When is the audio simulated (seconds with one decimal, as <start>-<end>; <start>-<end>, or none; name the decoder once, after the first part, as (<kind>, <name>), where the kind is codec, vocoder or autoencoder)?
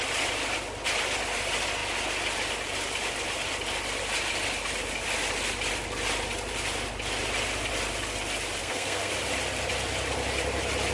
8.6-9.1 (codec, SNAC)